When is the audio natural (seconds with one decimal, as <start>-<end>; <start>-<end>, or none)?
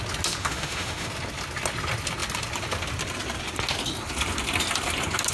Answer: 0.0-0.4; 1.1-5.3